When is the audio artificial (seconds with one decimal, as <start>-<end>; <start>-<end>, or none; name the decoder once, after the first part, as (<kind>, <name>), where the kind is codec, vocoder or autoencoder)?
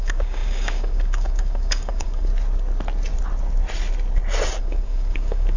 0.0-2.3 (codec, DAC); 4.6-5.6